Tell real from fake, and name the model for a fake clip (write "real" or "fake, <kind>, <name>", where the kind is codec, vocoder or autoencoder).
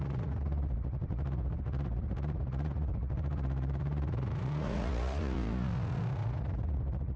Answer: fake, vocoder, Vocos